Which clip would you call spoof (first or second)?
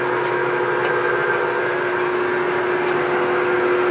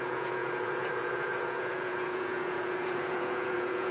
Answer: second